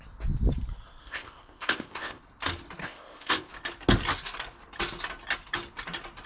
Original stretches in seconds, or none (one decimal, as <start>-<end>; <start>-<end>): 0.0-1.0; 2.2-2.8; 3.5-6.3

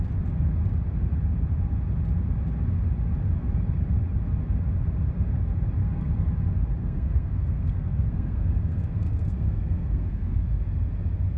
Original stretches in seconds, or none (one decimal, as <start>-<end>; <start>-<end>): 0.0-5.8; 6.3-6.8; 10.6-11.4

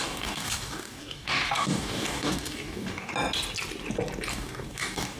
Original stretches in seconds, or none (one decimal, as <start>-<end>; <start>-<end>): 3.1-4.3

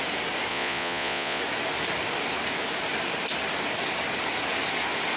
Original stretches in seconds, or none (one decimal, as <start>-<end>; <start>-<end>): 0.0-0.5; 1.4-5.2

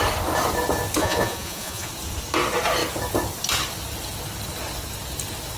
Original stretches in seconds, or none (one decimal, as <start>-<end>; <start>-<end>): 0.0-1.0; 1.9-5.6

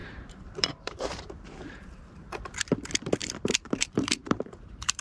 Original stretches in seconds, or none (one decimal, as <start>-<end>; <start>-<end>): 1.6-3.2

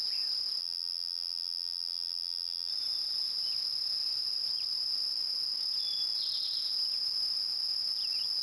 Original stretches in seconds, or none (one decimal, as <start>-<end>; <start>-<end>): 0.0-0.6; 2.7-8.4

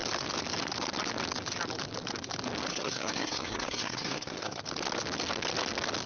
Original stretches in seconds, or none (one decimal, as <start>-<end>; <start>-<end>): 0.0-2.7; 4.6-6.1